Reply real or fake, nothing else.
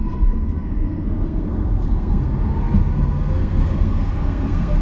fake